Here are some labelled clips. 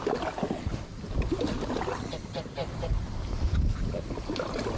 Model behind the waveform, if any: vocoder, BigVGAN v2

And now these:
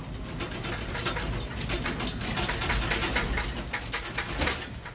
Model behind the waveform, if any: none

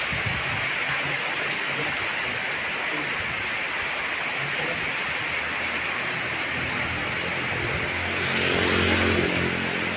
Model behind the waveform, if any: none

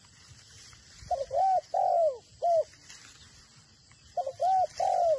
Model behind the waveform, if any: none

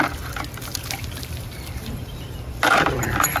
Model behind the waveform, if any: vocoder, BigVGAN v2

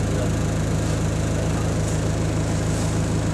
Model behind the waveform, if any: none